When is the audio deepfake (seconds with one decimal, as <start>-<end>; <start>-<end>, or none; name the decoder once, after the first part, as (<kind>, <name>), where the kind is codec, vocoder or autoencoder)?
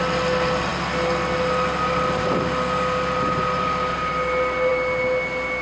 none